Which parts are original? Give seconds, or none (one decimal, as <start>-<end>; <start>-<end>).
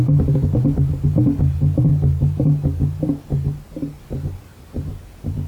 0.0-4.5